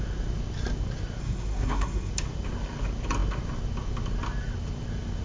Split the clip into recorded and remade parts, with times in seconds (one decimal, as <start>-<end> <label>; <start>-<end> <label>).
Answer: 0.0-1.2 recorded; 1.2-2.1 remade; 2.1-5.2 recorded